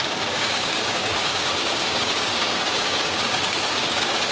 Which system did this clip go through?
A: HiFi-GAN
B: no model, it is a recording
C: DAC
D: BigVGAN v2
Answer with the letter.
C